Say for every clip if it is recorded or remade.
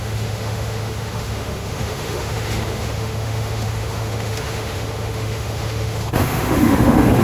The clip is remade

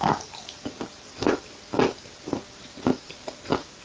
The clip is recorded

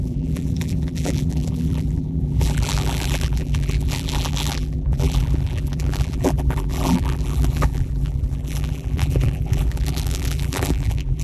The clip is remade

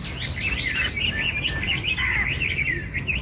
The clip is recorded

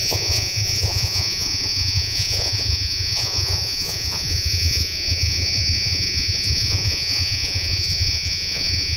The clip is remade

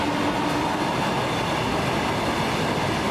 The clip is recorded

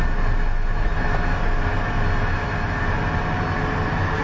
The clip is recorded